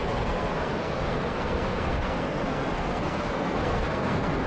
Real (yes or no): no